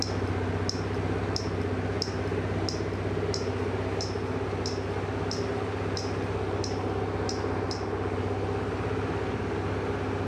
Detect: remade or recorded recorded